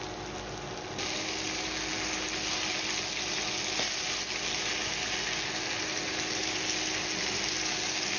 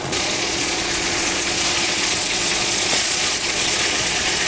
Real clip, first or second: first